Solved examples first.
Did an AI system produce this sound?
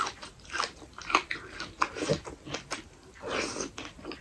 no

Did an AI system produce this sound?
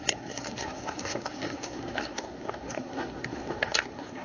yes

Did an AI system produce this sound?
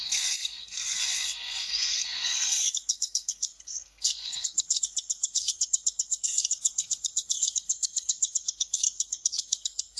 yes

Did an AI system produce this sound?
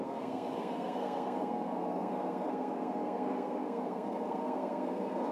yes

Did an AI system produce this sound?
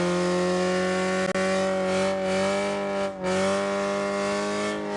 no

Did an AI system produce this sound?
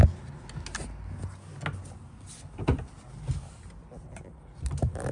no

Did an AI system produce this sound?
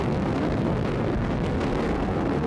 yes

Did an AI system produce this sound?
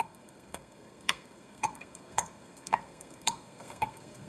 yes